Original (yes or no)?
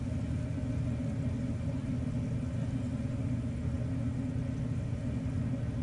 yes